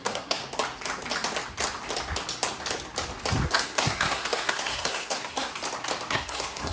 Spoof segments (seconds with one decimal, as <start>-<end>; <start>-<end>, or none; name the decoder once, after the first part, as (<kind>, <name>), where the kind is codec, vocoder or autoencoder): 0.0-0.4 (codec, SNAC); 3.5-5.5; 6.1-6.7